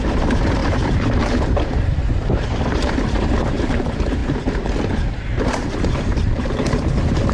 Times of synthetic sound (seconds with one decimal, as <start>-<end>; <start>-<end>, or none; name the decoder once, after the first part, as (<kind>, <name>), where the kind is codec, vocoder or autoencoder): 0.0-4.2 (vocoder, BigVGAN v2); 5.4-7.3